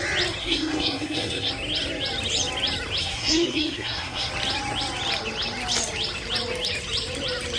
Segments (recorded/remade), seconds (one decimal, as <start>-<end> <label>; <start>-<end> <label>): 0.0-0.4 recorded; 0.4-1.5 remade; 1.5-3.0 recorded; 3.0-4.3 remade; 4.3-7.6 recorded